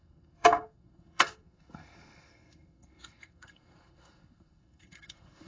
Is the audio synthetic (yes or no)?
yes